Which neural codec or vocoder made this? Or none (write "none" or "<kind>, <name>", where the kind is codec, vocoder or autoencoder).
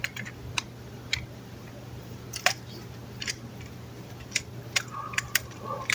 vocoder, BigVGAN v2